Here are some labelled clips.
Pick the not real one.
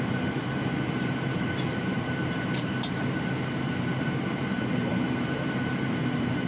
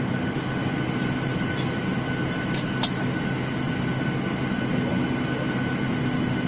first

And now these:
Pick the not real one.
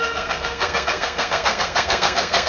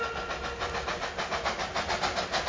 first